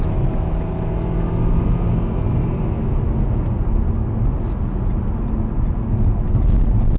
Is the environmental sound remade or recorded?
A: recorded